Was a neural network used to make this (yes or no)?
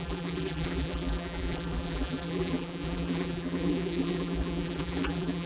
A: yes